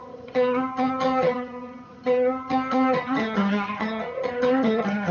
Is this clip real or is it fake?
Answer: fake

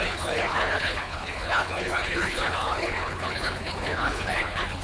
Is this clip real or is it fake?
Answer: fake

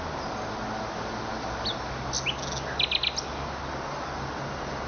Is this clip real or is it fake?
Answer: real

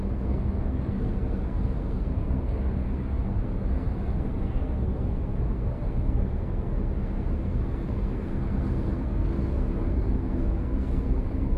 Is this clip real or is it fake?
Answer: fake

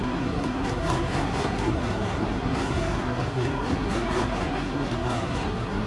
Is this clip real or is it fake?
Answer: fake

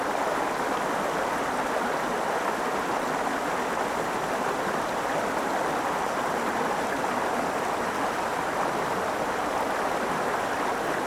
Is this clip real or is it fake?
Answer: real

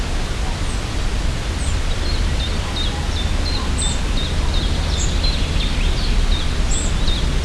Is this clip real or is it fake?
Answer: real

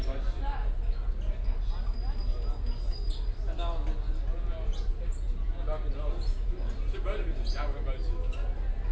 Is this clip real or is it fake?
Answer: real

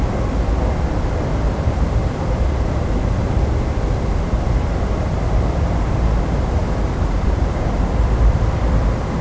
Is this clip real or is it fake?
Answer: fake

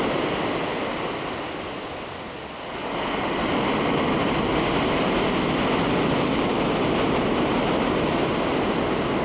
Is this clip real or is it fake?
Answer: real